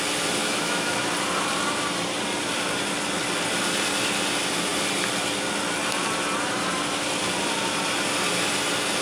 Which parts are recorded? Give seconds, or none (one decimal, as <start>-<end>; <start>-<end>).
0.0-0.4; 1.0-9.0